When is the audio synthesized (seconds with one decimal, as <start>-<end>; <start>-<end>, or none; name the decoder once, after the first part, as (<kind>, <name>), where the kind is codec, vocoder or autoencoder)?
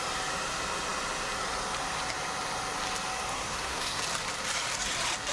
3.3-4.0 (codec, SNAC)